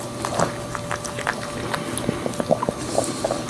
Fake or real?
real